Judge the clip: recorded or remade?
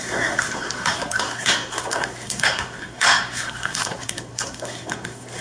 remade